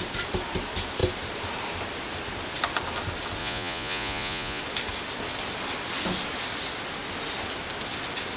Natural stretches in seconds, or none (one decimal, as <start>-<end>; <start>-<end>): 0.0-3.4; 4.6-8.4

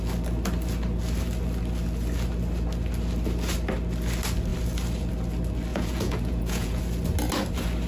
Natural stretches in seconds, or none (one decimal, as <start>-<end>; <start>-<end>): 0.0-5.7; 6.8-7.9